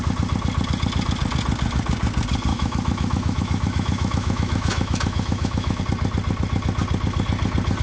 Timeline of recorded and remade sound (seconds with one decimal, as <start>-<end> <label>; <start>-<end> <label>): 0.0-2.5 recorded; 2.5-5.8 remade; 5.8-7.8 recorded